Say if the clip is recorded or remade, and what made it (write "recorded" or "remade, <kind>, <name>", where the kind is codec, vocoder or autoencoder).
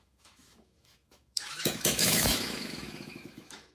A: remade, autoencoder, DAC-VAE